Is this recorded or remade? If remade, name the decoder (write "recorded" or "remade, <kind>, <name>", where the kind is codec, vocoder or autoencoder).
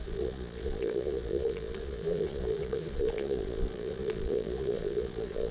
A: remade, vocoder, Vocos